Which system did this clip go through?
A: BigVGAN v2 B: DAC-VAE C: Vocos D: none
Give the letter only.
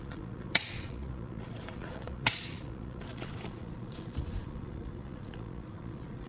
C